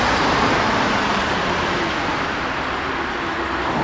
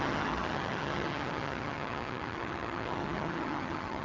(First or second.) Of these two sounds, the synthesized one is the second